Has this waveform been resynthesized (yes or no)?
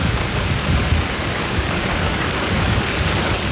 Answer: yes